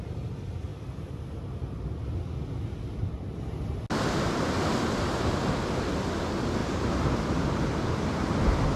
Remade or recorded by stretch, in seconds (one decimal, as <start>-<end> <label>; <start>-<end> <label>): 0.0-8.8 recorded